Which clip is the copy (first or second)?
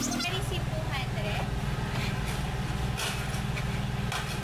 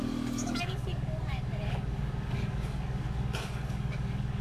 second